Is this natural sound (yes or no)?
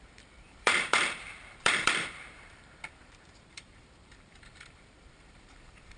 no